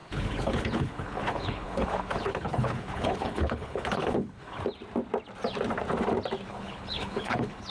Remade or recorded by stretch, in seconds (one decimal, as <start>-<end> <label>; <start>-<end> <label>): 0.0-4.6 remade; 4.6-6.5 recorded; 6.5-7.7 remade